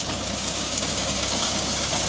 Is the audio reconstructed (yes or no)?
yes